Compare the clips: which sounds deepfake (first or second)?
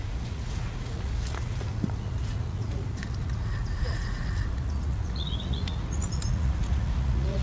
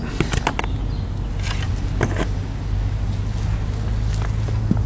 first